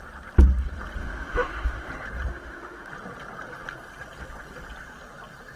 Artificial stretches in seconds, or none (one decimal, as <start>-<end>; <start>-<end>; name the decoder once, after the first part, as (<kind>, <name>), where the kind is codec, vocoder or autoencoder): 1.0-1.9 (autoencoder, DAC-VAE); 2.3-2.9